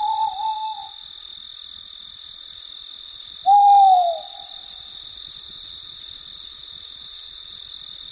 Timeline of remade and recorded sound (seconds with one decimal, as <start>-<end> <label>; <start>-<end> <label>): 0.0-8.1 recorded

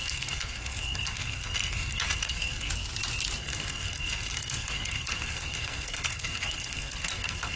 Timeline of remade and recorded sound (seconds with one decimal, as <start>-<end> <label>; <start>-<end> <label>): 0.0-2.7 remade; 2.7-3.4 recorded; 3.4-7.6 remade

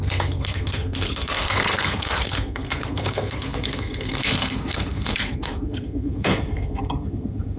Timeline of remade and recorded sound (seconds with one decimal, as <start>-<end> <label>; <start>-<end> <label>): 0.0-7.6 remade

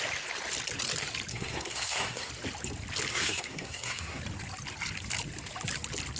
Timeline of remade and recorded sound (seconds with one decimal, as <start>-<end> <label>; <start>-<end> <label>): 0.0-1.3 recorded; 1.3-2.3 remade; 2.3-3.1 recorded; 3.1-4.2 remade; 4.2-6.2 recorded

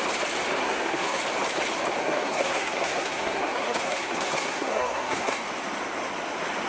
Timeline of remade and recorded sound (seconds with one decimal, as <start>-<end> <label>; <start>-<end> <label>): 0.0-0.6 recorded; 0.6-1.2 remade; 1.2-2.0 recorded; 2.0-5.4 remade; 5.4-6.7 recorded